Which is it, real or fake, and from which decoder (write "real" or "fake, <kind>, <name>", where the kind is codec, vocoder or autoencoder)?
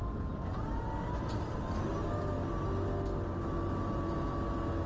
real